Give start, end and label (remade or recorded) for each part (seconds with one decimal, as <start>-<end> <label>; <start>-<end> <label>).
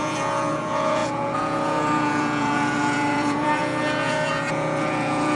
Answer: 0.0-5.4 remade